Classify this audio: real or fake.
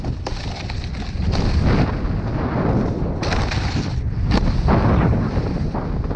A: real